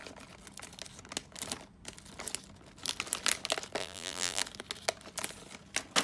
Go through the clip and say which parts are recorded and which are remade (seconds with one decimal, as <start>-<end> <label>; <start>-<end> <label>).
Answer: 0.0-3.8 recorded; 3.8-4.4 remade; 4.4-6.0 recorded